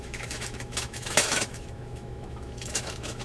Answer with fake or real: fake